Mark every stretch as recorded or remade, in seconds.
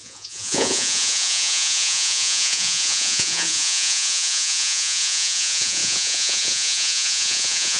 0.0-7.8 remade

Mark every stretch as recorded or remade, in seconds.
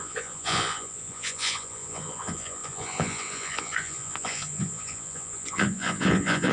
0.0-6.5 remade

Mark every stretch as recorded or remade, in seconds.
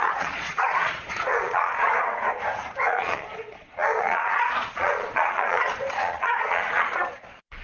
0.0-1.9 remade; 1.9-2.7 recorded; 2.7-7.6 remade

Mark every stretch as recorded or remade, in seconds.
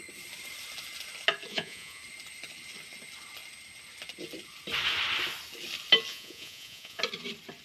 0.0-1.5 recorded; 1.5-2.0 remade; 2.0-6.1 recorded; 6.1-7.0 remade; 7.0-7.6 recorded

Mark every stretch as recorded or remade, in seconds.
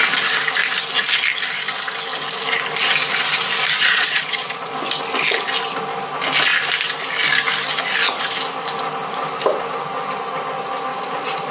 0.0-3.8 recorded; 3.8-4.7 remade; 4.7-10.9 recorded; 10.9-11.5 remade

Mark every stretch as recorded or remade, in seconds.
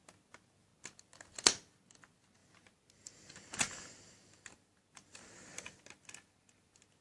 0.0-7.0 recorded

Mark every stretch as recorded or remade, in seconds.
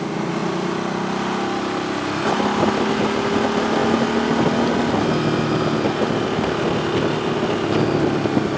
0.0-8.6 recorded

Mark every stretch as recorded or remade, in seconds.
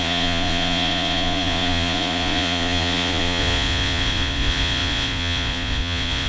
0.0-6.3 remade